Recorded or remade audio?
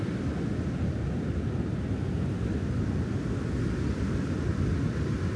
recorded